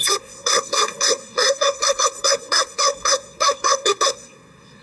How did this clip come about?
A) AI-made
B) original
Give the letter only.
A